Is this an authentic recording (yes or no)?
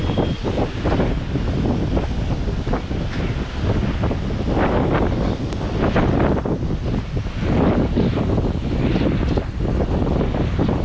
yes